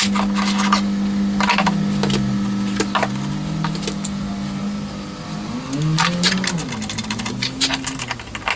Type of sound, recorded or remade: recorded